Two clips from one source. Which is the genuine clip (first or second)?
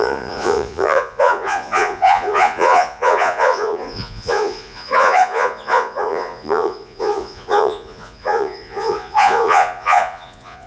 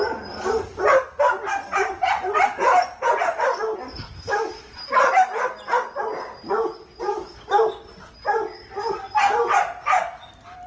second